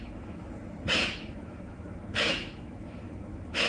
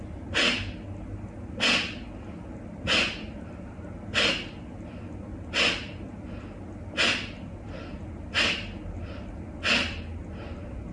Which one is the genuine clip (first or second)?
second